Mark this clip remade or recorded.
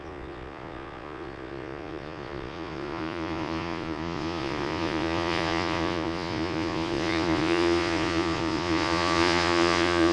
remade